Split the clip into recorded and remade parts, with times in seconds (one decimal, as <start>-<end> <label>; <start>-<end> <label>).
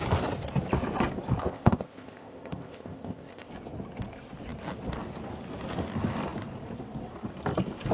0.0-1.4 recorded; 1.4-3.5 remade; 3.5-7.9 recorded